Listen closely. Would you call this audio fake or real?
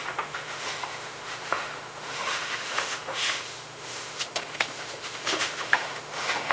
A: fake